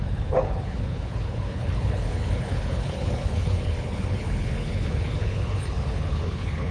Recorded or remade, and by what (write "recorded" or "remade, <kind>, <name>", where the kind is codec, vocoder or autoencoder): remade, codec, HILCodec